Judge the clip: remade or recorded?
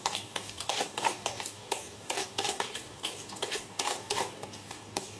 remade